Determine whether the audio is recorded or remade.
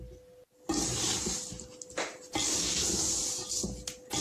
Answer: recorded